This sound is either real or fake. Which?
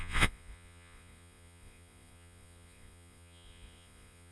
fake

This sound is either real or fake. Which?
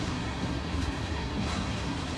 fake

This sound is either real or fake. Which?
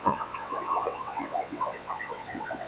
fake